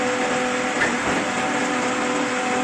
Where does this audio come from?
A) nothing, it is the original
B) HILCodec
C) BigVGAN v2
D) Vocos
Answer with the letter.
A